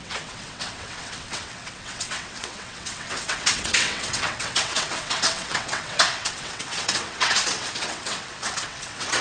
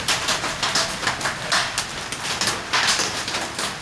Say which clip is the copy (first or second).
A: first